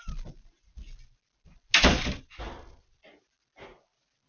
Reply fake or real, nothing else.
real